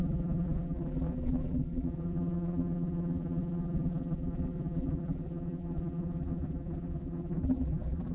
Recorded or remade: remade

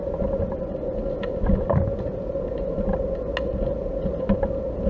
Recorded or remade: recorded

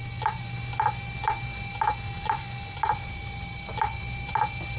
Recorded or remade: recorded